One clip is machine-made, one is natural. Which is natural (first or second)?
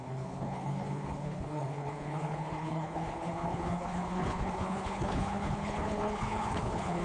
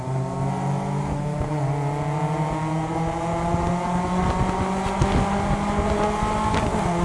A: second